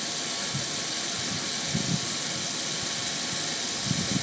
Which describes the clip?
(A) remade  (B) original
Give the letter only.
B